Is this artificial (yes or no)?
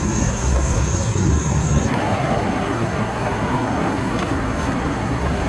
yes